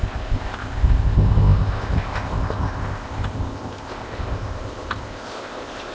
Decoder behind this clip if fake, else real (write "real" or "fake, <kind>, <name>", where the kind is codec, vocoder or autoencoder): fake, codec, ZipCodec